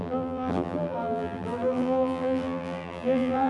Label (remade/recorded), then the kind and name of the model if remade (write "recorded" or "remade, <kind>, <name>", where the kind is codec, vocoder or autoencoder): remade, vocoder, BigVGAN v2